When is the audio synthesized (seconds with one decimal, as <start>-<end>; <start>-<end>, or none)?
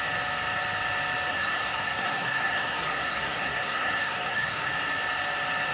1.3-4.7